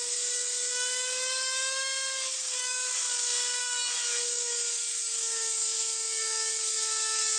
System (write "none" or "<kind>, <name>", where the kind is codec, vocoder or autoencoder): codec, DAC